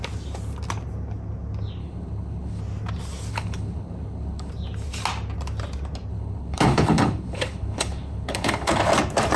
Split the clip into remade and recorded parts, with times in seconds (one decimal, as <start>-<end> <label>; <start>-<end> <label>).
0.0-1.8 recorded; 1.8-2.6 remade; 2.6-3.3 recorded; 3.3-4.5 remade; 4.5-6.1 recorded; 6.1-8.8 remade; 8.8-9.4 recorded